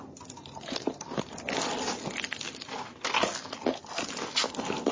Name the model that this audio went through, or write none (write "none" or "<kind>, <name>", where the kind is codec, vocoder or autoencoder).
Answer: none